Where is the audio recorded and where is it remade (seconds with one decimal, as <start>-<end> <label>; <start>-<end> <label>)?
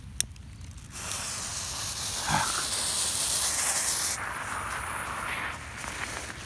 0.0-6.5 recorded